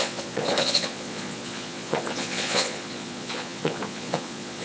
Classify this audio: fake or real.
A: fake